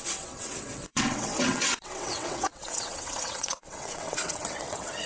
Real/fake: fake